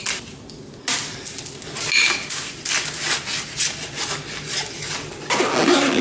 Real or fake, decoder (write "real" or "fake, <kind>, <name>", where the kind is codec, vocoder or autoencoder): real